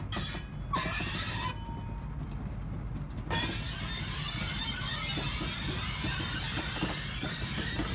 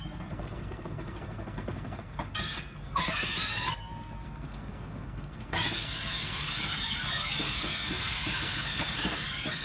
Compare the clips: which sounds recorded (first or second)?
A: first